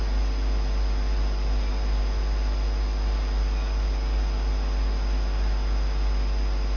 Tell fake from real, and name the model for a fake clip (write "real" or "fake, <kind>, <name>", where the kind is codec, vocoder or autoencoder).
real